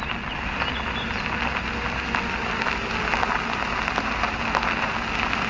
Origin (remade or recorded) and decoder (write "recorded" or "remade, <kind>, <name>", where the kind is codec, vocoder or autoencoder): recorded